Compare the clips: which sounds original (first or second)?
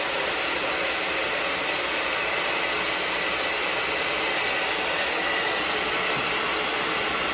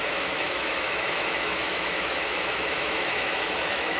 first